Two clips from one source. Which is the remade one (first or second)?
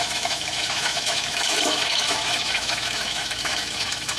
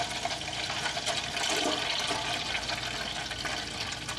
first